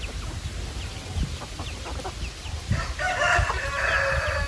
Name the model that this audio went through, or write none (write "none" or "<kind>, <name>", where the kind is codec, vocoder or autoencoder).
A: none